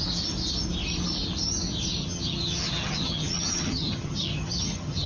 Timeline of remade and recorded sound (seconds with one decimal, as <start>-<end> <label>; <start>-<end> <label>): 0.0-2.0 recorded; 2.0-5.1 remade